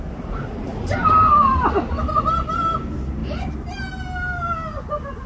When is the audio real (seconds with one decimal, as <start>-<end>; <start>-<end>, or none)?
0.0-5.3